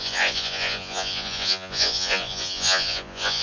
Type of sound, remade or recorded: remade